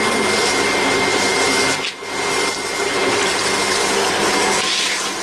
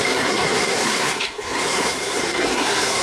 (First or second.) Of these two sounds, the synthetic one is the second